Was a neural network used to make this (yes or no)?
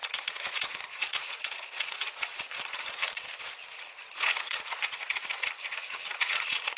yes